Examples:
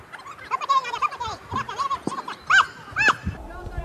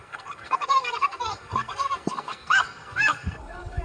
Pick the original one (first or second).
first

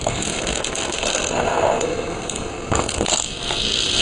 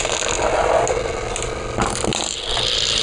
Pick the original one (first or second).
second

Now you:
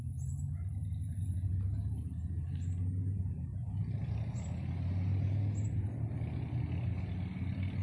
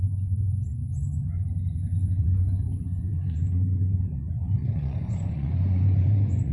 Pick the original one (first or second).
first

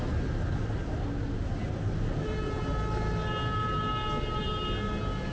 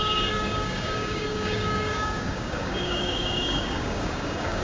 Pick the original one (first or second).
first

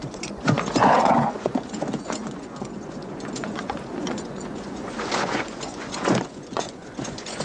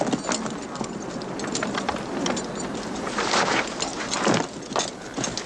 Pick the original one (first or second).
second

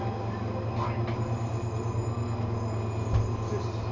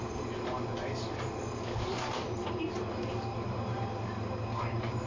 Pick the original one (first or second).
first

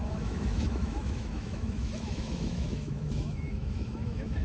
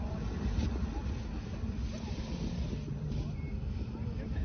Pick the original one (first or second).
second